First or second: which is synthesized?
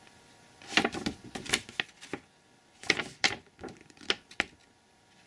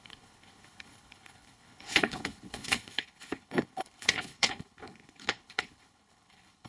second